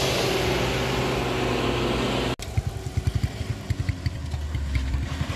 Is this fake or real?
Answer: real